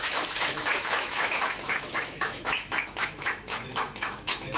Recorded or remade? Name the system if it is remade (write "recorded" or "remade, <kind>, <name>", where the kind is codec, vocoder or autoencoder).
remade, autoencoder, DAC-VAE